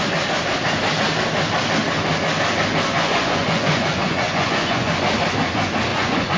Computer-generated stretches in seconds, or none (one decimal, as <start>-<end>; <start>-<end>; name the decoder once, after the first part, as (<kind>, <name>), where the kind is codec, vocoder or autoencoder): 2.9-4.9 (vocoder, Vocos); 5.9-6.4